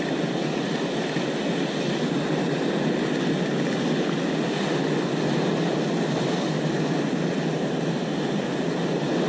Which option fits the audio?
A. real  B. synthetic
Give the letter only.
A